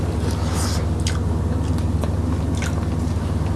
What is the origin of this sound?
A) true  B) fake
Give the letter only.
A